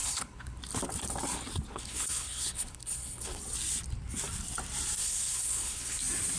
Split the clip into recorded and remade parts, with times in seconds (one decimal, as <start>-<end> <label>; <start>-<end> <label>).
0.0-0.6 remade; 0.6-1.7 recorded; 1.7-3.4 remade; 3.4-5.0 recorded; 5.0-6.0 remade; 6.0-6.4 recorded